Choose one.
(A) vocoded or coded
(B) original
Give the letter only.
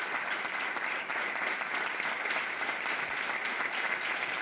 B